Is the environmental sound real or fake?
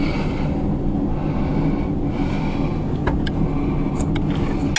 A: real